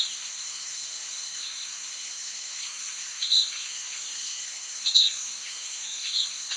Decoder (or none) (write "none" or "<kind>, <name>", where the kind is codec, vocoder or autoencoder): codec, SNAC